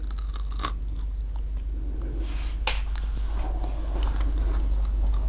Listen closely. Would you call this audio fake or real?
real